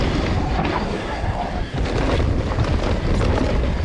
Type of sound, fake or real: real